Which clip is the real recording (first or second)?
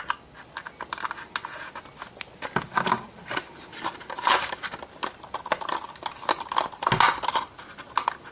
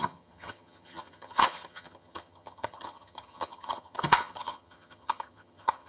first